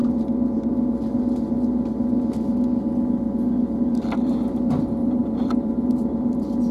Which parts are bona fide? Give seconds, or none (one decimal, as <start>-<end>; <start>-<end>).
0.0-3.8